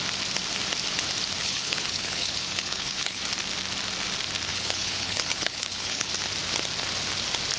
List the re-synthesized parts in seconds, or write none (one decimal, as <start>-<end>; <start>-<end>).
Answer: 1.4-3.2; 4.5-6.1